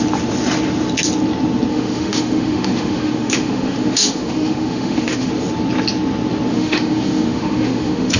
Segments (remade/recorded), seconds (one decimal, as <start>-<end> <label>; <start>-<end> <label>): 0.0-1.7 recorded; 1.7-5.3 remade; 5.3-6.5 recorded; 6.5-8.2 remade